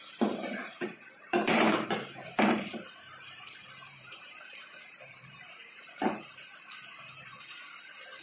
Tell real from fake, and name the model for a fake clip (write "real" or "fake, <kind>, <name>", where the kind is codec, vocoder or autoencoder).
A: fake, vocoder, BigVGAN v2